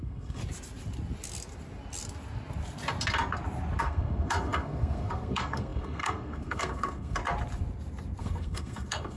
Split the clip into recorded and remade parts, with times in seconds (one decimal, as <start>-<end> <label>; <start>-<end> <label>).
0.0-0.4 remade; 0.4-3.8 recorded; 3.8-7.2 remade; 7.2-8.2 recorded; 8.2-9.2 remade